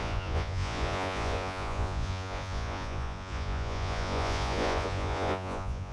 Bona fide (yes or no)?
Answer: no